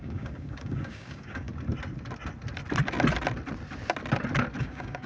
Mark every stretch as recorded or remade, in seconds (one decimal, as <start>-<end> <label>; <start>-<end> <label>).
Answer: 0.0-1.5 remade; 1.5-4.6 recorded; 4.6-5.1 remade